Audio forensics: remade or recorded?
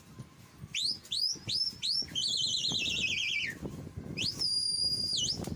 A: recorded